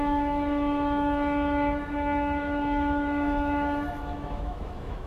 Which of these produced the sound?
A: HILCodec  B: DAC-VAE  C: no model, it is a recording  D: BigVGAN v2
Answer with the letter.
B